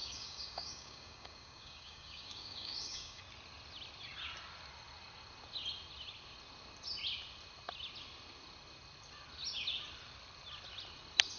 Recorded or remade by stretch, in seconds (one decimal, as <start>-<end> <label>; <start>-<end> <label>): 0.0-3.2 remade; 3.2-11.4 recorded